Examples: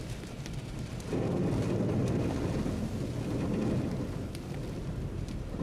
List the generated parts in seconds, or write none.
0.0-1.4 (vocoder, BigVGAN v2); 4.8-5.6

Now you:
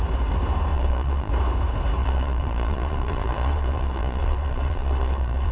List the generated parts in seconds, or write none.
0.7-1.3 (vocoder, Vocos); 2.0-5.5

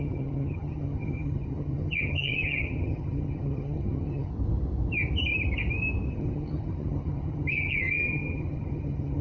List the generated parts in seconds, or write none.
0.0-4.3 (vocoder, HiFi-GAN); 6.1-9.2

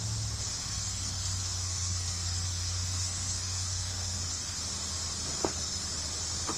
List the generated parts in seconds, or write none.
0.6-4.6 (codec, SNAC); 5.4-5.9

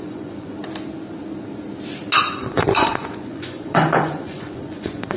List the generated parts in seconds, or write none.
0.0-0.6 (vocoder, Vocos); 2.2-5.2